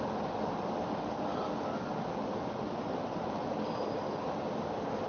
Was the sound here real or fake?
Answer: real